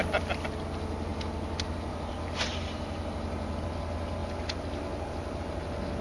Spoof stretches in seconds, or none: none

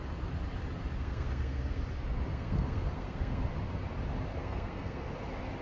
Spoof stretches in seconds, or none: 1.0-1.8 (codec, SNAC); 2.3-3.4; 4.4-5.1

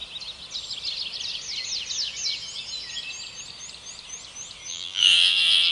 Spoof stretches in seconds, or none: 4.7-5.7 (vocoder, BigVGAN v2)

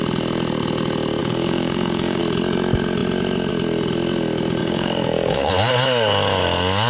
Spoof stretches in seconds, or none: 1.2-2.2 (codec, DAC); 4.6-5.5